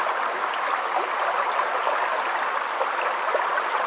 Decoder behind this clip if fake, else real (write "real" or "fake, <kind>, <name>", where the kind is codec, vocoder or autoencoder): real